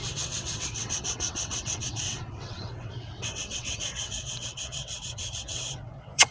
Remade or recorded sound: remade